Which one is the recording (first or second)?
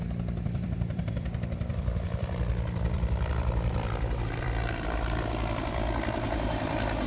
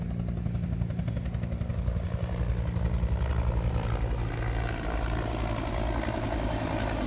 second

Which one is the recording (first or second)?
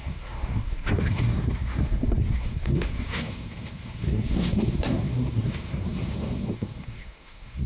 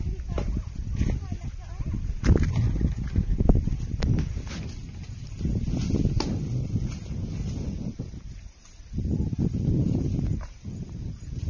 second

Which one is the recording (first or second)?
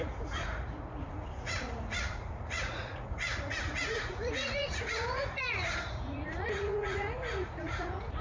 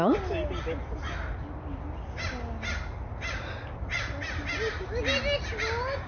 second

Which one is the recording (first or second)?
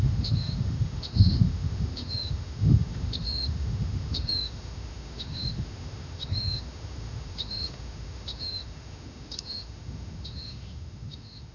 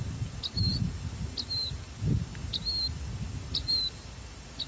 second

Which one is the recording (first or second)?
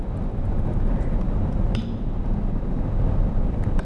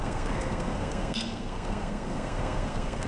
first